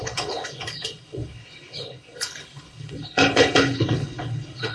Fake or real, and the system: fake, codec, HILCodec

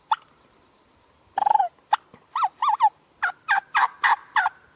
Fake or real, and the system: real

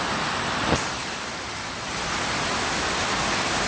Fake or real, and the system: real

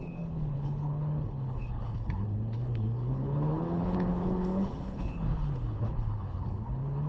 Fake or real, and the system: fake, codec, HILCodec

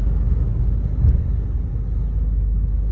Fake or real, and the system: real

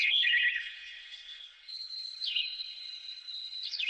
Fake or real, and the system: fake, codec, HILCodec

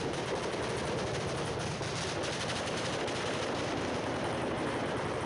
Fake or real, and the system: real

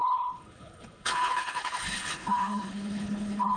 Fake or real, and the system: fake, codec, HILCodec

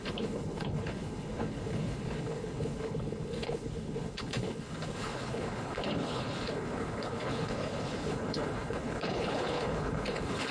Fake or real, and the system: fake, codec, HILCodec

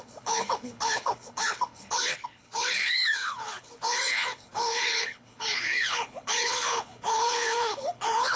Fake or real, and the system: fake, codec, HILCodec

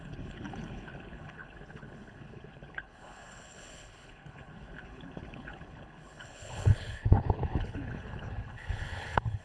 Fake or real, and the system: fake, codec, HILCodec